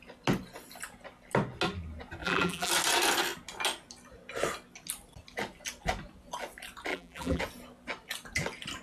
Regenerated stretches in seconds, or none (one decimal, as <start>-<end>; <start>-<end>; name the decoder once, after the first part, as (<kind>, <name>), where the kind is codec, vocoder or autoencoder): 2.2-2.7 (vocoder, BigVGAN v2); 6.9-7.4